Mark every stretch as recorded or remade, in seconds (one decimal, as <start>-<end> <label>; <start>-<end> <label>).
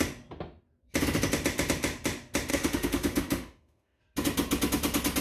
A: 0.0-2.5 recorded; 2.5-4.0 remade; 4.0-5.2 recorded